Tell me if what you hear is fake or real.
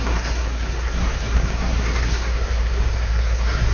fake